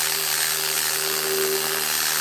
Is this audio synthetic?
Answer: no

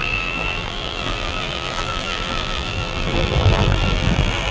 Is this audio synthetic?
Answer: yes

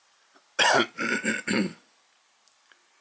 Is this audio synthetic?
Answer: no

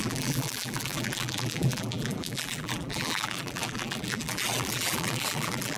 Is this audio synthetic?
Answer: yes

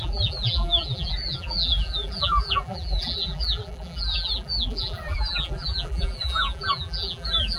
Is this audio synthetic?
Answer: yes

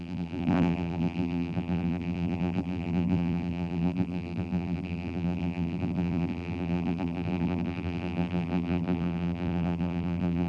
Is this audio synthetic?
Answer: yes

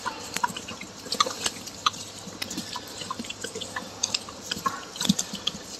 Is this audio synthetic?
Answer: yes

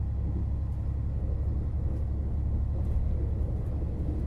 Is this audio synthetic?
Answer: no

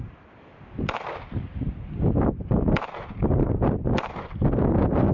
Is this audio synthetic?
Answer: no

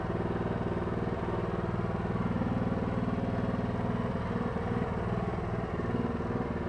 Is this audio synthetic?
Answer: no